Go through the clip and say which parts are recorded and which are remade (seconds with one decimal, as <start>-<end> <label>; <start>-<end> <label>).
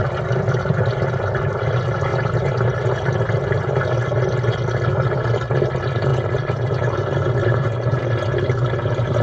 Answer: 0.0-2.1 recorded; 2.1-2.7 remade; 2.7-7.4 recorded; 7.4-8.1 remade; 8.1-9.2 recorded